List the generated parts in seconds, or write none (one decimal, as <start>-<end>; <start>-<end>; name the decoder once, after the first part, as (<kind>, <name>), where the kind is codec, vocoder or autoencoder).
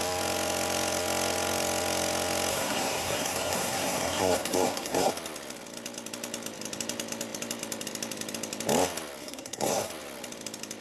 2.5-5.1 (codec, SNAC); 9.2-9.9